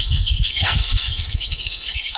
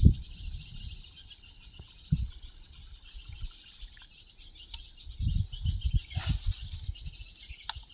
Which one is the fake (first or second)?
first